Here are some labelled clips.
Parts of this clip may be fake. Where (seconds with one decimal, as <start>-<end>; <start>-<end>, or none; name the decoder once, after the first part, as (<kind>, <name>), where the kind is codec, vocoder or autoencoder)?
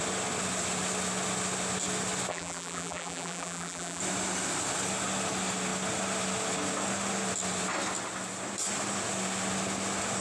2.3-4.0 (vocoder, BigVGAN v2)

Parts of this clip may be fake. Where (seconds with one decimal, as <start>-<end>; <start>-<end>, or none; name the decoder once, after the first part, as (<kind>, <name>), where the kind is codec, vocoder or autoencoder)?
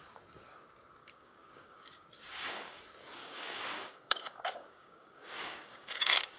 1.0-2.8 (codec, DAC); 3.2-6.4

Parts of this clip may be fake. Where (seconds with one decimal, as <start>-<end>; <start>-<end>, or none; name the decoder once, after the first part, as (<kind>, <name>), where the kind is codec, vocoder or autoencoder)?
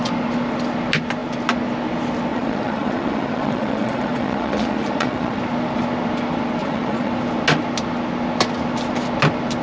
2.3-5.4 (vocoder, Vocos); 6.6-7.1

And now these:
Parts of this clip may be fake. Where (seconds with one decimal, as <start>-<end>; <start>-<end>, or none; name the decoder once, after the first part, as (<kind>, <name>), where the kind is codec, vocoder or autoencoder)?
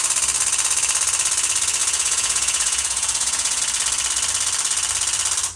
1.8-3.6 (vocoder, Vocos)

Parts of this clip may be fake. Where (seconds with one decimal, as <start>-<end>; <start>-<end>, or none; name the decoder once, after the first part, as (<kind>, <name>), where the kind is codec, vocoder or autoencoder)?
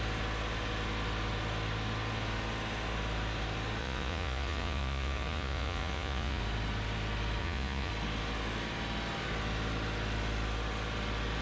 3.8-6.4 (vocoder, Vocos); 7.4-7.9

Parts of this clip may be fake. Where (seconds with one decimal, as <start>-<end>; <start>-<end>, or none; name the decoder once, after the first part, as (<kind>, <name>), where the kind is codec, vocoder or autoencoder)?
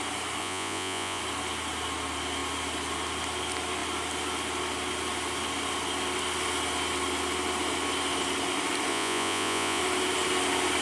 0.4-1.2 (vocoder, Vocos); 8.9-9.8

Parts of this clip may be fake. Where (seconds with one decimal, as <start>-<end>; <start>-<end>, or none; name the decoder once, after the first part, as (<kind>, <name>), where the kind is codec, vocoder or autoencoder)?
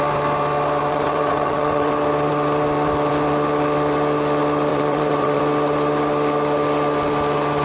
0.9-1.9 (vocoder, WaveNeXt); 4.7-5.4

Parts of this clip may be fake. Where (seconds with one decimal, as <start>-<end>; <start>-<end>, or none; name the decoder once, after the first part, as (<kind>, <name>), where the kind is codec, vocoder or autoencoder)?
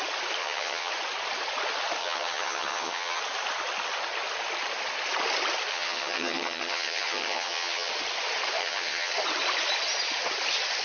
0.4-0.9 (vocoder, HiFi-GAN); 2.0-3.2; 5.7-7.9; 8.6-9.1